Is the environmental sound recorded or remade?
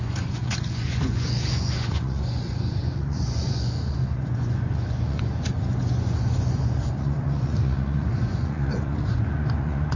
remade